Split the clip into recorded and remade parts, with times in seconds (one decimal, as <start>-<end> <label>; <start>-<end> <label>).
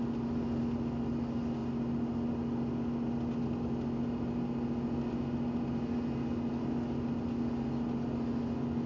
0.0-8.9 recorded